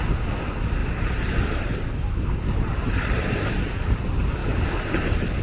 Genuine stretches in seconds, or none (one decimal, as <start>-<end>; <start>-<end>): 0.0-0.8; 4.0-4.4; 5.0-5.4